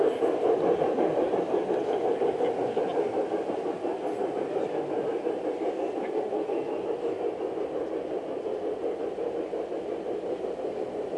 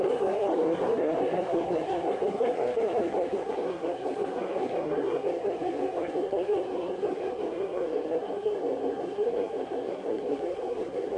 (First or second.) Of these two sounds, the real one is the first